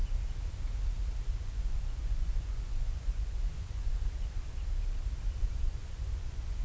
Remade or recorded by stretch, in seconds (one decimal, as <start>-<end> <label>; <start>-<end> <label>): 0.0-1.4 recorded; 1.4-4.5 remade; 4.5-5.4 recorded; 5.4-6.6 remade